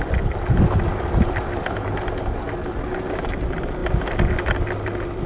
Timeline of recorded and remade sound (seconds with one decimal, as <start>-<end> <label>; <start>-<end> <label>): 0.0-5.3 recorded